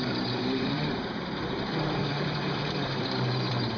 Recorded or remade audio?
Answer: remade